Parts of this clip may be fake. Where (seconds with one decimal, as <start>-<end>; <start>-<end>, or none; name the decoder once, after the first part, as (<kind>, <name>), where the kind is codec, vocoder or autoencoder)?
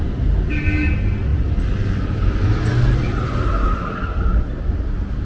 1.3-4.4 (vocoder, BigVGAN v2)